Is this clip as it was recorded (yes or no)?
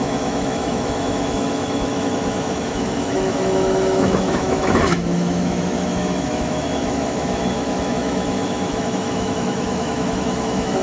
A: no